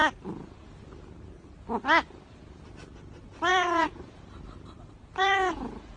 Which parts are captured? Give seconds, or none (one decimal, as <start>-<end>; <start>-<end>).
0.0-3.5; 4.2-5.2